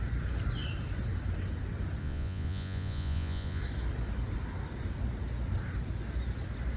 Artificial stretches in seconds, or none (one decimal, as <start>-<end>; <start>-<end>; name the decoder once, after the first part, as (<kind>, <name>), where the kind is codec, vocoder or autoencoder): 2.0-3.6 (vocoder, Vocos)